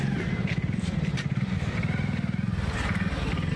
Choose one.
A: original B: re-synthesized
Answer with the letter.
A